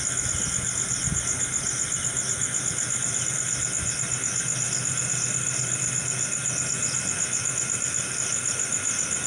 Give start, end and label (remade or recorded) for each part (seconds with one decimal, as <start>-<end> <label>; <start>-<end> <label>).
0.0-9.3 recorded